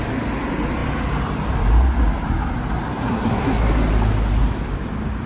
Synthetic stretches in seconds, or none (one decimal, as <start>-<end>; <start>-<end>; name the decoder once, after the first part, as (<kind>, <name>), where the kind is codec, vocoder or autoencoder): 2.9-3.7 (codec, SNAC)